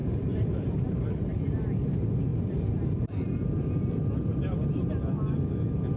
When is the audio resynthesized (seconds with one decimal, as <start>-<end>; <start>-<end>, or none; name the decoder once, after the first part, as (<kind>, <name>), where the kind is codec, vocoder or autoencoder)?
0.0-1.3 (vocoder, BigVGAN v2); 2.3-4.9